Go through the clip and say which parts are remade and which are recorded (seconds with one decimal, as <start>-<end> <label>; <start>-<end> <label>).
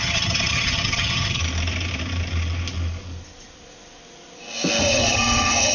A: 0.0-1.4 remade; 1.4-4.8 recorded; 4.8-5.7 remade